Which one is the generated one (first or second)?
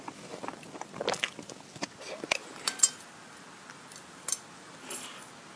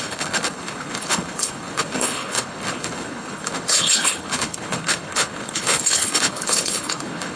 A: second